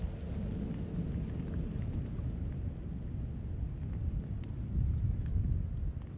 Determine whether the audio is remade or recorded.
recorded